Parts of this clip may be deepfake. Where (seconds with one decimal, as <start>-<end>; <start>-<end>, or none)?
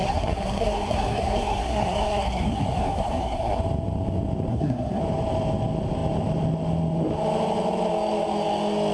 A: 0.0-3.6; 4.5-5.0